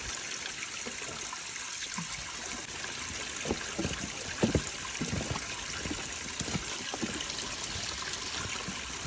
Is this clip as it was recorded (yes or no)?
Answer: yes